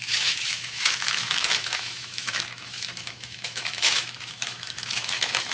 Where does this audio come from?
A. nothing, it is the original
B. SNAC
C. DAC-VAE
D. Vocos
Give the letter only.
C